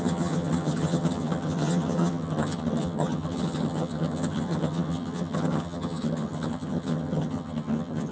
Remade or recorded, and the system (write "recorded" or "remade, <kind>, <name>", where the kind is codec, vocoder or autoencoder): remade, vocoder, HiFi-GAN